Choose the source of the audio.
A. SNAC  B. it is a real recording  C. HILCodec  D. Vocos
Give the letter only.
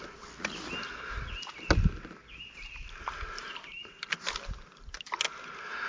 B